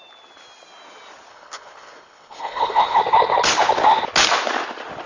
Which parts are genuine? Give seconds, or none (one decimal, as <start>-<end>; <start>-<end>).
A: 0.0-1.3; 3.0-5.1